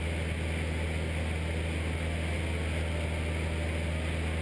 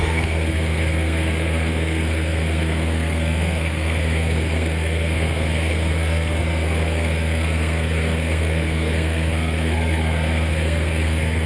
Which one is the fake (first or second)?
second